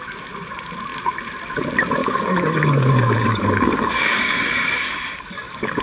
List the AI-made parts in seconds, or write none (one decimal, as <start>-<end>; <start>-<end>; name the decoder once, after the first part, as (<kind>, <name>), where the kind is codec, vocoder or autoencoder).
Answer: 2.0-5.8 (codec, DAC)